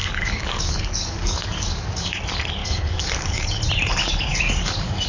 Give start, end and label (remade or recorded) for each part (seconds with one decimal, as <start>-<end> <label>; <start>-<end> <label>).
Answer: 0.0-2.2 remade; 2.2-2.6 recorded; 2.6-3.4 remade; 3.4-4.0 recorded; 4.0-5.1 remade